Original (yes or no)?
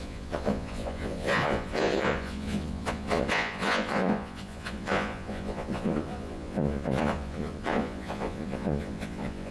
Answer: no